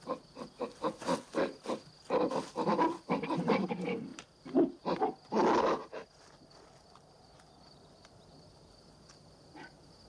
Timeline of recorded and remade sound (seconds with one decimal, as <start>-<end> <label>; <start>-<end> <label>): 0.0-10.1 recorded